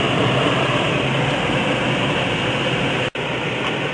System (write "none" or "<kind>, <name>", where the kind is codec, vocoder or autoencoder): none